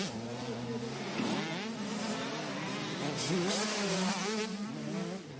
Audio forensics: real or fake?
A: real